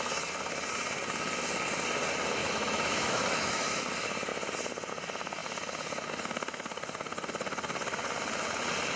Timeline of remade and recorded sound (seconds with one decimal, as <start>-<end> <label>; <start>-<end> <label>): 0.0-2.4 recorded; 2.4-3.8 remade; 3.8-9.0 recorded

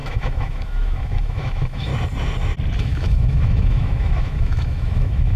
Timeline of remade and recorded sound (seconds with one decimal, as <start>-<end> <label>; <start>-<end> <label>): 0.0-1.9 remade; 1.9-2.8 recorded; 2.8-5.4 remade

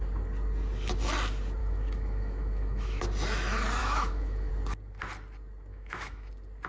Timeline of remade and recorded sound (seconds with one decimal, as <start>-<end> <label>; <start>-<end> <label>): 0.0-1.6 recorded; 1.6-3.0 remade; 3.0-3.8 recorded; 3.8-4.5 remade; 4.5-5.7 recorded; 5.7-6.3 remade; 6.3-6.7 recorded

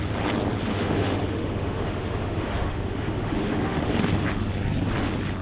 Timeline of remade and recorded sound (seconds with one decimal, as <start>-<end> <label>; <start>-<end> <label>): 0.0-0.7 recorded; 0.7-3.9 remade; 3.9-5.4 recorded